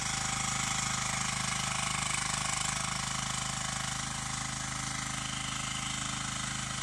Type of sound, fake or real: real